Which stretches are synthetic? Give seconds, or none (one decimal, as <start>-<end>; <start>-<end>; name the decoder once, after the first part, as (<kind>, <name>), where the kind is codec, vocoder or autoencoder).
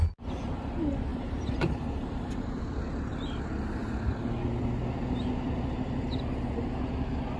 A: 1.1-2.6 (vocoder, BigVGAN v2)